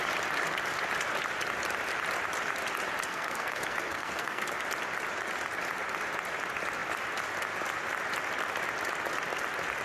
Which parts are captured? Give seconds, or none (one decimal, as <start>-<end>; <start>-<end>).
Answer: 0.0-3.1; 4.5-9.8